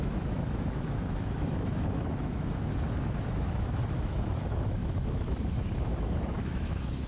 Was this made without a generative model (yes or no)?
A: no